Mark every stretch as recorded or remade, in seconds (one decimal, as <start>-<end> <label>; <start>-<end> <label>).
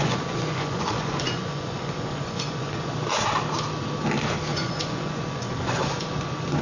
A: 0.0-2.9 remade; 2.9-4.5 recorded; 4.5-6.6 remade